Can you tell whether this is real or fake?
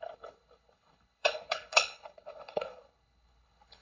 fake